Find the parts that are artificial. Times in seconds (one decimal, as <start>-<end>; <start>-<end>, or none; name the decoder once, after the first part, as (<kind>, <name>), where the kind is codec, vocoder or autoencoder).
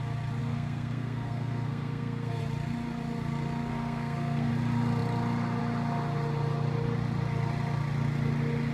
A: 0.4-2.4 (codec, SNAC); 3.7-4.5